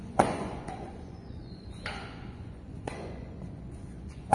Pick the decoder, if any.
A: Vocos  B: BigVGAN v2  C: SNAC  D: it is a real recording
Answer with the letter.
A